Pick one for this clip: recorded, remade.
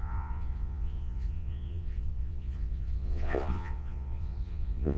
remade